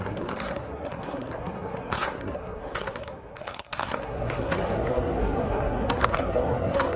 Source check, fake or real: fake